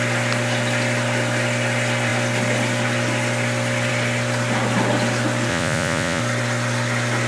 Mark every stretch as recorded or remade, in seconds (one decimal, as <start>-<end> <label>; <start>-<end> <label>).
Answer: 0.0-5.5 recorded; 5.5-6.2 remade; 6.2-7.3 recorded